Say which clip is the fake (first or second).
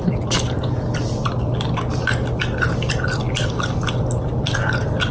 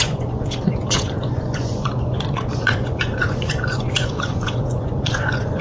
second